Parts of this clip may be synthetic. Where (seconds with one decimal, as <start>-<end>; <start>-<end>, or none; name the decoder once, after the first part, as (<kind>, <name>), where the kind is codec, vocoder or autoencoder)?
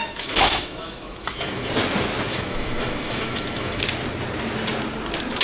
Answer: 0.0-1.7 (autoencoder, DAC-VAE); 2.3-3.8